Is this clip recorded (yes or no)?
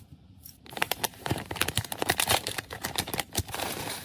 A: no